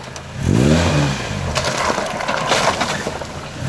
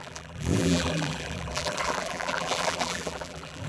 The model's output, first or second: second